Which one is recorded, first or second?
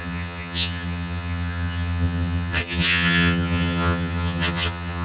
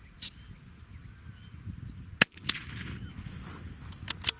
second